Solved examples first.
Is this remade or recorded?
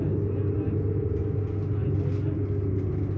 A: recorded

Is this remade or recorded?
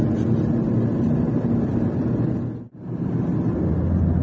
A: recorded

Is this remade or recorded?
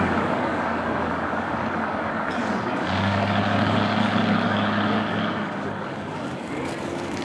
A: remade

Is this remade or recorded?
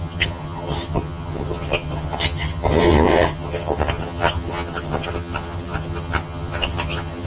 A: remade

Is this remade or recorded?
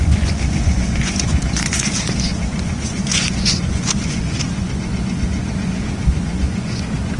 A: remade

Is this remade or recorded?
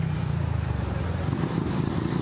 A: recorded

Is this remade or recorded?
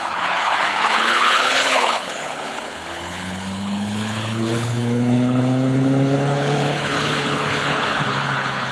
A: remade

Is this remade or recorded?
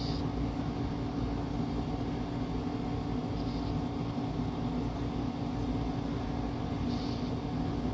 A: recorded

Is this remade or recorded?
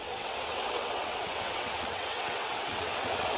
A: remade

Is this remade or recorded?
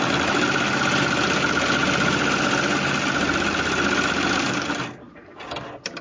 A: recorded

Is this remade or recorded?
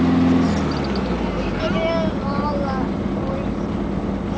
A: recorded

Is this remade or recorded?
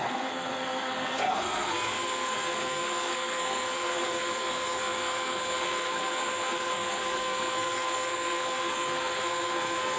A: remade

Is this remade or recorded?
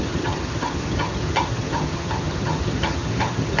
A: remade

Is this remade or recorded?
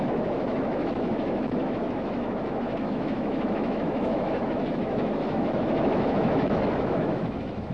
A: remade